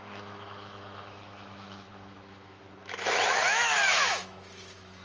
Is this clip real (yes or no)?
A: no